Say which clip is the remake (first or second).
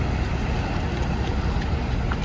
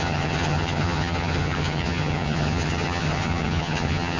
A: second